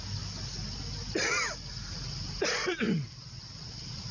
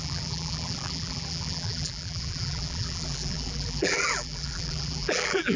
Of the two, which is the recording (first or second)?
first